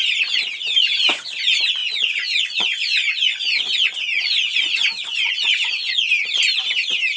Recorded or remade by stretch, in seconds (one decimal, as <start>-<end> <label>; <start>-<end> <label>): 0.0-1.8 recorded; 1.8-6.1 remade; 6.1-7.2 recorded